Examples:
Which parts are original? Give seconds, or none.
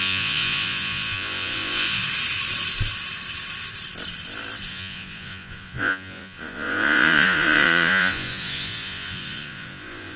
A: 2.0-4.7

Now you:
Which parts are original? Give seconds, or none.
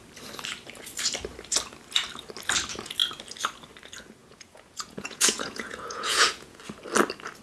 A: 0.0-4.2; 6.6-7.4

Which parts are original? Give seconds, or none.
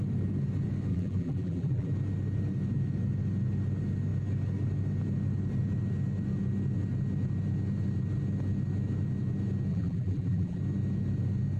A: 0.0-0.9; 1.9-9.7; 10.6-11.6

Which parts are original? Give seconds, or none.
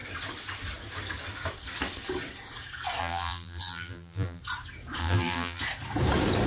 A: 0.0-3.0; 4.4-5.0; 5.6-6.5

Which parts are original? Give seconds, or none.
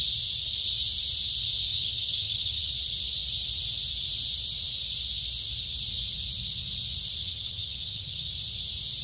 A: 0.0-1.7; 2.7-7.2; 8.3-9.0